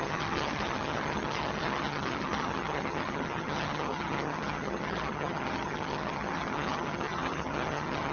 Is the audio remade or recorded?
remade